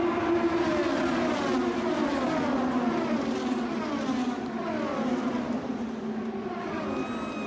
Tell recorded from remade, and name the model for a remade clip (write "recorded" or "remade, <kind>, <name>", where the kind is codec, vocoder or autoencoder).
recorded